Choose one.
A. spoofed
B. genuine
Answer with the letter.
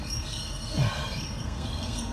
A